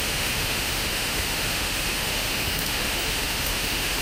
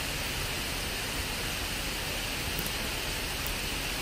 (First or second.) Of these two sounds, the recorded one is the second